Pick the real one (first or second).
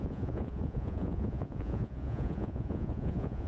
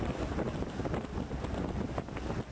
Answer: second